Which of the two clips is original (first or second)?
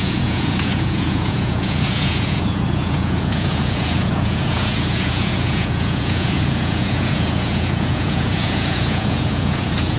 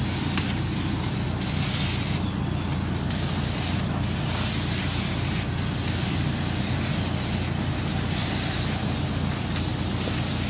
second